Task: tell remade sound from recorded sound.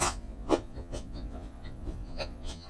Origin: remade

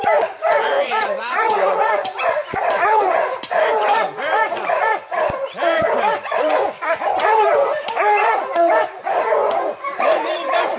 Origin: remade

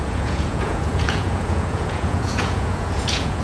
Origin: remade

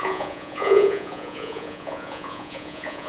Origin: remade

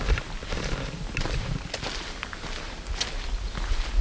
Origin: recorded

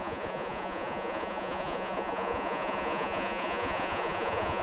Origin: remade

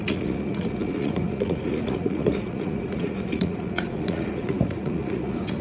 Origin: remade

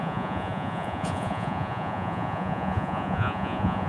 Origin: remade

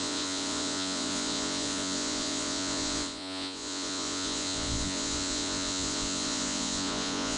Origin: remade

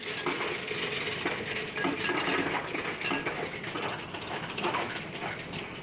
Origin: recorded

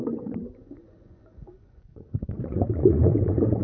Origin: remade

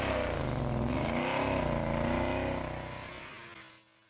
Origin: recorded